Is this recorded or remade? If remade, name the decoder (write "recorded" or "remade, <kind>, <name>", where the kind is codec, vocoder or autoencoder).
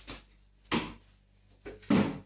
recorded